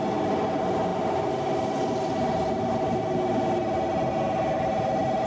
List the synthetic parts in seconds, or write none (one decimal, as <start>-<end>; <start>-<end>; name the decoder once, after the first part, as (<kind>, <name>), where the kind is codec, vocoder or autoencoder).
none